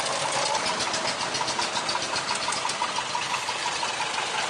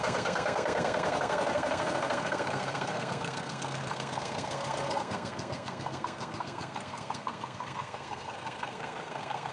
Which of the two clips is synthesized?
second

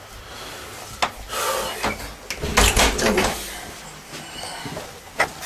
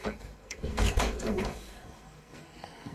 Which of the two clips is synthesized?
second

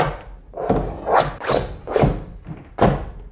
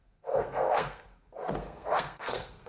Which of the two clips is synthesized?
second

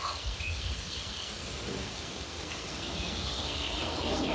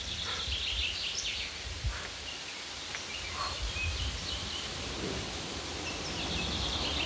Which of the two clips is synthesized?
first